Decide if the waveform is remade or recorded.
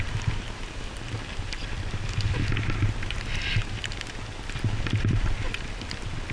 recorded